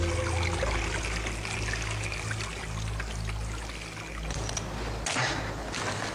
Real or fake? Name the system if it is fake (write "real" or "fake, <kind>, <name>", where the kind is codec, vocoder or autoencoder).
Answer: real